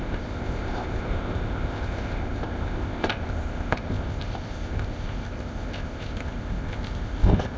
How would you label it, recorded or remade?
remade